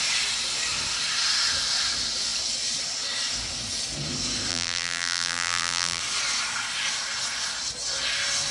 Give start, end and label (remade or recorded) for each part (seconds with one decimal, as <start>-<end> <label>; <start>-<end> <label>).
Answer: 0.0-4.5 recorded; 4.5-6.0 remade; 6.0-8.5 recorded